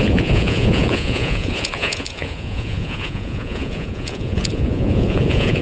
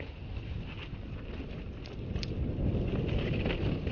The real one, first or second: second